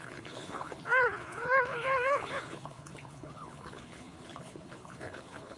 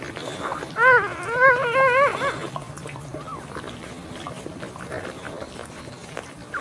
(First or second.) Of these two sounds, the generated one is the first